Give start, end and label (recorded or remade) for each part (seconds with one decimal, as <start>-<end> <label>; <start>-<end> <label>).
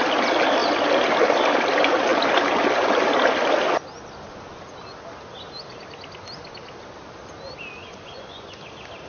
0.0-7.8 recorded; 7.8-8.6 remade; 8.6-9.1 recorded